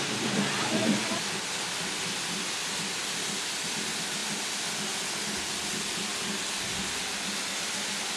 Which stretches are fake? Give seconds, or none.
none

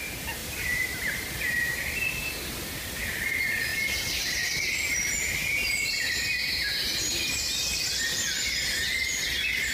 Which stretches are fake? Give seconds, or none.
0.4-1.1 (vocoder, BigVGAN v2); 5.4-7.6